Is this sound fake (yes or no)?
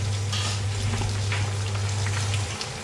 no